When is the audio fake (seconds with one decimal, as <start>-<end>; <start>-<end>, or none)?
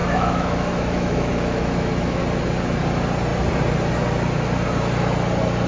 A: 0.0-2.2